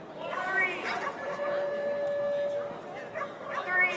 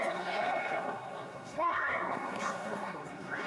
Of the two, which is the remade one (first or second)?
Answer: second